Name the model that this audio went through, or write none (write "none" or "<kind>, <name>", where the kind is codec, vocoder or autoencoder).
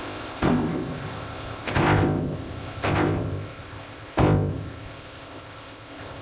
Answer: codec, ZipCodec